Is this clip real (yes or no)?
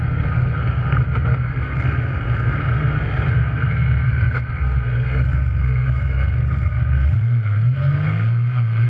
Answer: no